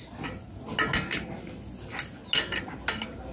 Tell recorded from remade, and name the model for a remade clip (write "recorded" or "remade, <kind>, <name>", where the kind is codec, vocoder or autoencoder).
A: recorded